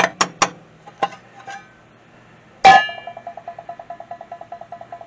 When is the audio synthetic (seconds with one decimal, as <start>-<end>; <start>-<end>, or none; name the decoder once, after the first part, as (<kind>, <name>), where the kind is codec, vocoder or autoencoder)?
none